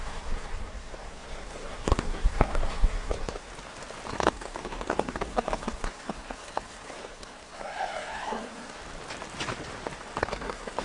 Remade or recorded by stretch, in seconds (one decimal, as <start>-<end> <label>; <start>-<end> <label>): 0.0-3.5 remade; 3.5-4.1 recorded; 4.1-8.8 remade; 8.8-10.2 recorded; 10.2-10.8 remade